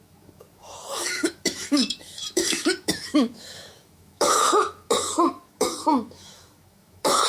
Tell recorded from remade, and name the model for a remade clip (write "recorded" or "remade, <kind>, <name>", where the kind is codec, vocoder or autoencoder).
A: remade, autoencoder, DAC-VAE